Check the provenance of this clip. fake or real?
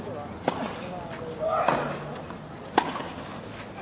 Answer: real